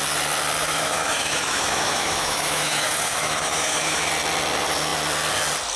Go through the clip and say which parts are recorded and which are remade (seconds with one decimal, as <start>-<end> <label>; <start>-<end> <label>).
0.0-0.6 recorded; 0.6-4.1 remade; 4.1-5.8 recorded